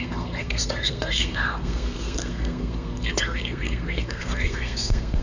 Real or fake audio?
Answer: fake